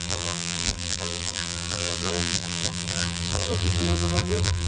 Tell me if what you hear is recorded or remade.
remade